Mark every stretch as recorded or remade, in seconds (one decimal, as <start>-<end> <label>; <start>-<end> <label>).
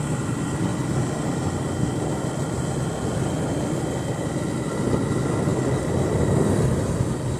0.0-7.4 recorded